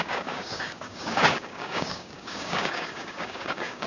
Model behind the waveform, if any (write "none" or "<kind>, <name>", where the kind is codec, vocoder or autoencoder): codec, DAC